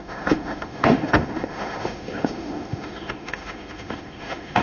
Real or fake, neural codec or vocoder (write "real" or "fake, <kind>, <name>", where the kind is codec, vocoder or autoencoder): fake, autoencoder, DAC-VAE